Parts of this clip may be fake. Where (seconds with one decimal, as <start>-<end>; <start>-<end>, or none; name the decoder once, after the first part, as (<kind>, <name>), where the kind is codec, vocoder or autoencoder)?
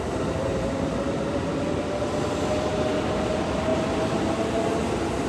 none